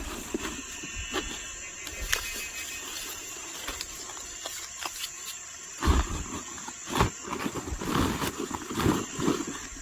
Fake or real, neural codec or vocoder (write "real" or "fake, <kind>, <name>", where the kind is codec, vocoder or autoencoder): real